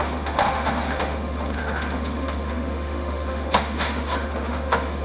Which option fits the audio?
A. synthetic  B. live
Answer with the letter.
A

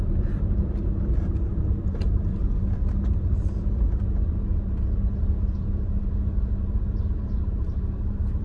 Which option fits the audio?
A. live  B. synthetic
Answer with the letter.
B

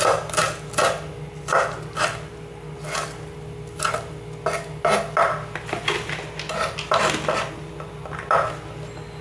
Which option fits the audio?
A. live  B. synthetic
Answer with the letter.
A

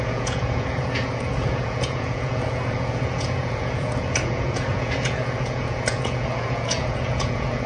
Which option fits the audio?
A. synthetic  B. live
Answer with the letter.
A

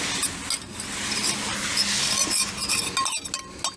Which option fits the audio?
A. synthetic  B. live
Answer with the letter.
B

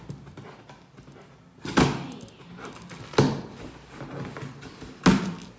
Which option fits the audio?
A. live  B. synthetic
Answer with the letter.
A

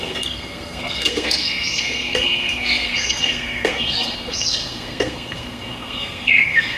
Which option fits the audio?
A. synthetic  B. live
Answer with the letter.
A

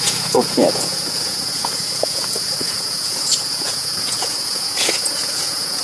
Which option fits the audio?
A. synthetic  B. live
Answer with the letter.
A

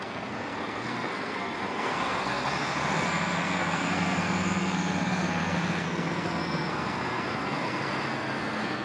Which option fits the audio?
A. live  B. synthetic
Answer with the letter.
B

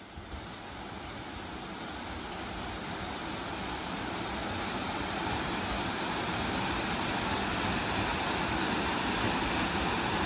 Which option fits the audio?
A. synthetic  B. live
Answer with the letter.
B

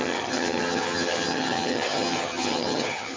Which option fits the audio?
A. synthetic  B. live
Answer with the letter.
A